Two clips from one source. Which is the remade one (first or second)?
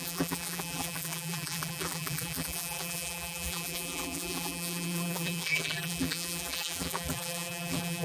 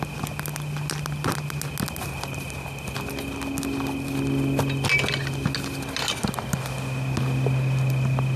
first